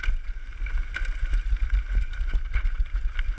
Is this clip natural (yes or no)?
yes